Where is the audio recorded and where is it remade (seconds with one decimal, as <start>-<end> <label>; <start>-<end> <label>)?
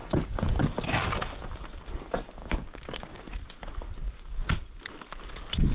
0.0-0.5 remade; 0.5-2.4 recorded; 2.4-3.2 remade; 3.2-5.7 recorded